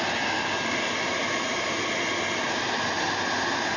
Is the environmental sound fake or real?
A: real